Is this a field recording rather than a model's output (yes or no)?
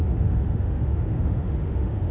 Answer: no